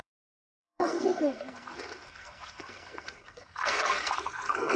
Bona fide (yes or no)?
no